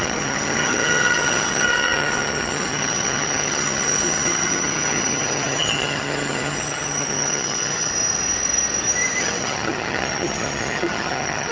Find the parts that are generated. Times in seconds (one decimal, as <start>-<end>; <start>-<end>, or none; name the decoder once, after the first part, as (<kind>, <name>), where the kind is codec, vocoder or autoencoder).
0.0-7.9 (vocoder, HiFi-GAN); 9.2-11.5